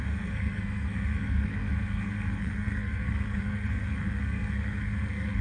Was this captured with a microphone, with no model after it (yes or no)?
no